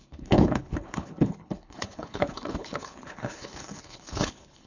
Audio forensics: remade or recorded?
remade